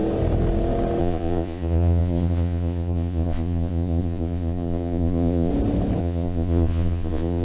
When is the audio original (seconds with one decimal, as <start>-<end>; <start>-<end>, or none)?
0.0-1.0; 5.5-6.0